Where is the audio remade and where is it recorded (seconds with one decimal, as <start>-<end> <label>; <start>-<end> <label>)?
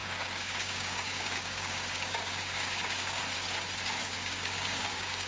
0.0-3.2 remade; 3.2-4.0 recorded; 4.0-5.3 remade